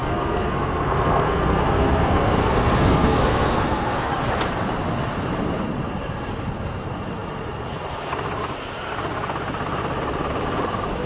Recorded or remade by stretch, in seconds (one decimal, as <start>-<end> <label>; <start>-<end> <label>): 0.0-4.1 remade; 4.1-11.1 recorded